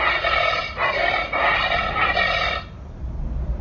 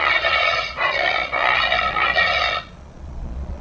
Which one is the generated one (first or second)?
second